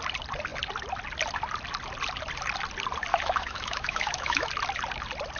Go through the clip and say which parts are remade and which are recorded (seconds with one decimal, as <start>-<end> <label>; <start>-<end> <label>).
0.0-3.1 recorded; 3.1-4.5 remade; 4.5-5.4 recorded